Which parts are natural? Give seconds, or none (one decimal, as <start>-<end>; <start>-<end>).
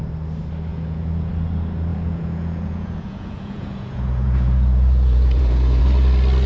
0.0-0.7; 1.3-1.9; 5.8-6.5